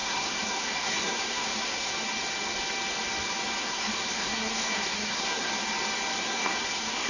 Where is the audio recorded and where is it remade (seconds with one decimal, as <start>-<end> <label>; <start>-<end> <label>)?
0.0-1.9 remade; 1.9-3.6 recorded; 3.6-5.5 remade; 5.5-6.2 recorded; 6.2-7.1 remade